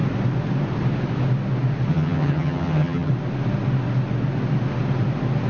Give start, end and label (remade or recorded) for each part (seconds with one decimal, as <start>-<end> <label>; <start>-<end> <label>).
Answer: 0.0-1.9 recorded; 1.9-3.1 remade; 3.1-5.5 recorded